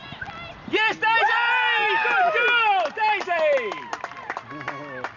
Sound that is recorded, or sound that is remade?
recorded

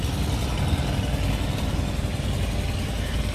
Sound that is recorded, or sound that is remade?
recorded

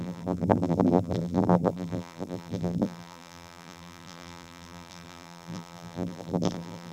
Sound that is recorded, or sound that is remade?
remade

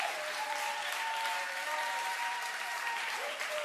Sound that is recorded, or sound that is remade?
remade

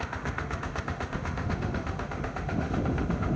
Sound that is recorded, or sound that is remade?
remade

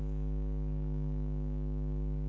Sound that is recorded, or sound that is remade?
remade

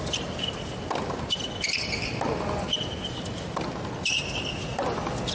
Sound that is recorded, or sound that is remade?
recorded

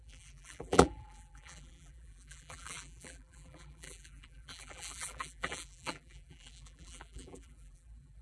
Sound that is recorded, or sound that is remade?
remade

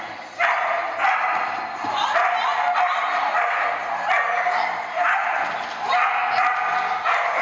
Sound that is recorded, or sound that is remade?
recorded